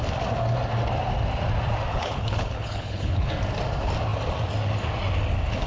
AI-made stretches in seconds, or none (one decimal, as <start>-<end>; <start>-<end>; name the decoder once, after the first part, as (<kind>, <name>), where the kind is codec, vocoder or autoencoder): 1.9-3.3 (codec, HILCodec)